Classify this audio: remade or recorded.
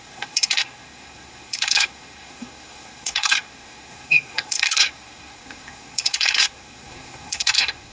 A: remade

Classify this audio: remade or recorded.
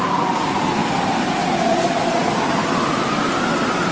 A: recorded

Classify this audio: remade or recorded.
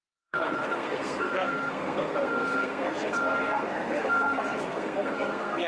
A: remade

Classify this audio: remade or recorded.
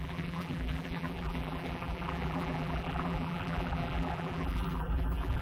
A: remade